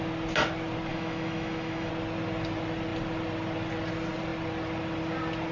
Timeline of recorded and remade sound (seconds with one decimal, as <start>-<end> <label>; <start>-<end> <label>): 0.0-0.9 recorded; 0.9-1.9 remade; 1.9-5.5 recorded